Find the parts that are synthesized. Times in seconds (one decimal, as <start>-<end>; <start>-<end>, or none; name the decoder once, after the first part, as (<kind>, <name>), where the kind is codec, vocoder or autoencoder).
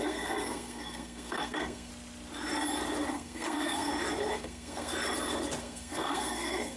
0.0-1.9 (codec, SNAC); 3.1-3.9; 4.4-4.9; 5.6-6.8